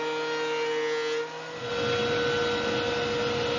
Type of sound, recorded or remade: recorded